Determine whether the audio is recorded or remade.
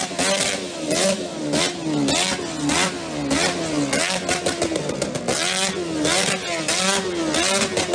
recorded